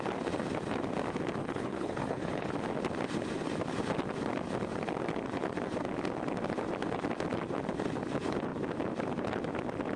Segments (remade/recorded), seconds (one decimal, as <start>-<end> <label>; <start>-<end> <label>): 0.0-1.4 recorded; 1.4-2.5 remade; 2.5-10.0 recorded